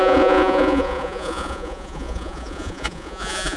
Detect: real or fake fake